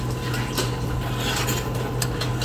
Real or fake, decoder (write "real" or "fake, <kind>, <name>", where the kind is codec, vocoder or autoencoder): real